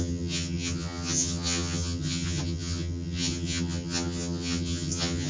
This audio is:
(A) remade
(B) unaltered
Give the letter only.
A